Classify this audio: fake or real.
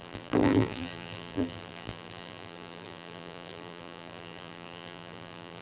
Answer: fake